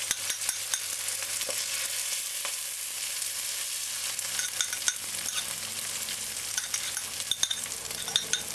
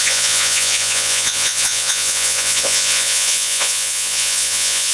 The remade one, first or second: second